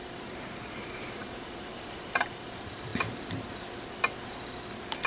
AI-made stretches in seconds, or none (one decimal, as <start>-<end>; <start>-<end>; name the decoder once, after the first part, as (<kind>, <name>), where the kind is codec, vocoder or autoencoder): 0.0-2.9 (vocoder, BigVGAN v2)